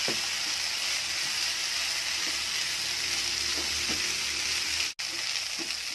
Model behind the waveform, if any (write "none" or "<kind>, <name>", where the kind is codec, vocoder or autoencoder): none